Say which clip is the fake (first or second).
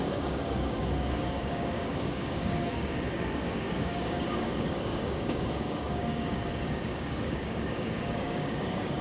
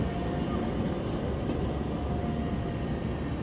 first